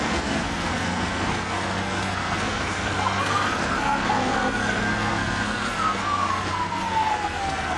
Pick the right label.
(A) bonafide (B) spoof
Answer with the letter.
B